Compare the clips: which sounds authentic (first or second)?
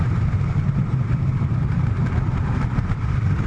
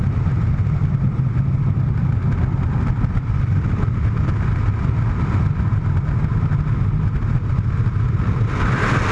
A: second